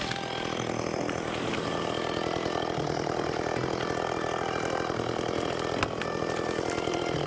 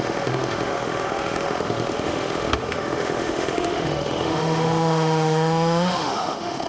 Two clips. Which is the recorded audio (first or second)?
first